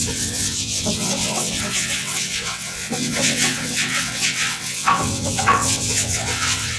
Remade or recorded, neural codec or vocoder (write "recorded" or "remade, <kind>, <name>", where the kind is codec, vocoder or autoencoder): remade, vocoder, WaveNeXt